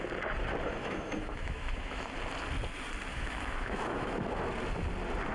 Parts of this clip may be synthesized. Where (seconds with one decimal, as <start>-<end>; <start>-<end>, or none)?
0.8-2.1; 3.1-4.4